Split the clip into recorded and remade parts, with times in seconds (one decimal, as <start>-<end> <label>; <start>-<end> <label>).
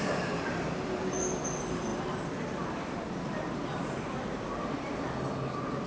0.0-5.9 recorded